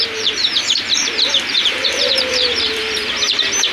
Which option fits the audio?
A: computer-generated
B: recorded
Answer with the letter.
A